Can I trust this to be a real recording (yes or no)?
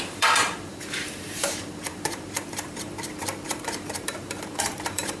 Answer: no